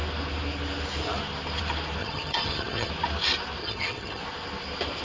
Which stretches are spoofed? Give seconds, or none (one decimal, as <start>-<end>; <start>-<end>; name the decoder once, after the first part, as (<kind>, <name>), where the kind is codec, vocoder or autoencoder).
2.0-2.9 (vocoder, HiFi-GAN); 3.6-4.2

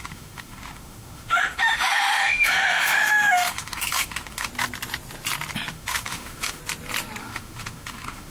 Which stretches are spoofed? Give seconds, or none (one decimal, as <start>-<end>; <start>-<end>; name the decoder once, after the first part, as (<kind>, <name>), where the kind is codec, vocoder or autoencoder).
0.0-4.5 (autoencoder, DAC-VAE); 5.7-6.6; 7.2-8.3

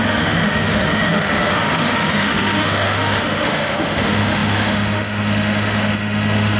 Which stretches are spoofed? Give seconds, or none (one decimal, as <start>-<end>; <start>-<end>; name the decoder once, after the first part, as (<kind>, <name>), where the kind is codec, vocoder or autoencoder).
0.0-6.6 (autoencoder, DAC-VAE)

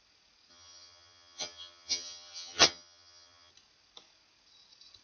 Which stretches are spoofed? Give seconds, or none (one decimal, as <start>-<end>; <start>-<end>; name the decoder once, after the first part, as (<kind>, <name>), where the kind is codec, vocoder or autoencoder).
0.5-3.5 (vocoder, HiFi-GAN)

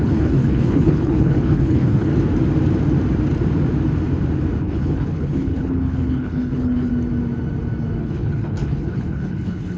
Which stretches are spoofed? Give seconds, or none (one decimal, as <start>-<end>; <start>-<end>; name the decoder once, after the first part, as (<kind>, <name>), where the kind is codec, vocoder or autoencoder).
0.0-2.1 (codec, HILCodec); 4.6-6.9; 8.0-9.8